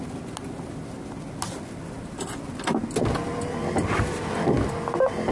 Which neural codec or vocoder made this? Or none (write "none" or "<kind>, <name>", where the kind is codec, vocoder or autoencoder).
none